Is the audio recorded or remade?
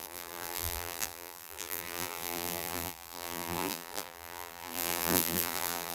remade